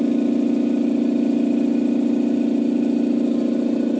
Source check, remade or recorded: recorded